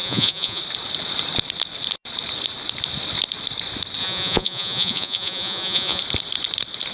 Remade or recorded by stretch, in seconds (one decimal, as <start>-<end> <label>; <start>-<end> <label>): 0.0-0.6 remade; 0.6-4.0 recorded; 4.0-6.0 remade; 6.0-6.9 recorded